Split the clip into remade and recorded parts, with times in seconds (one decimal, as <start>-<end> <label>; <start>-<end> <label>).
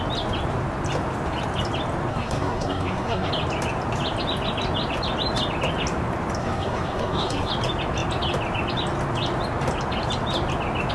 0.0-2.1 recorded; 2.1-3.3 remade; 3.3-6.4 recorded; 6.4-7.5 remade; 7.5-10.9 recorded